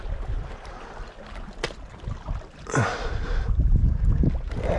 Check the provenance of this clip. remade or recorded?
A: recorded